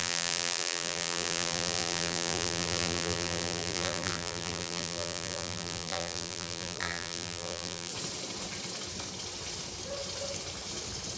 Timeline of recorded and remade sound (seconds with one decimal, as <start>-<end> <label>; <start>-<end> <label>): 0.0-7.9 remade; 7.9-11.2 recorded